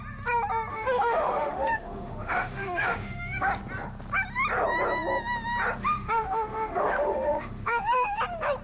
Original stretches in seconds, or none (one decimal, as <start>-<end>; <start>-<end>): 0.0-0.7; 3.5-5.8; 8.2-8.6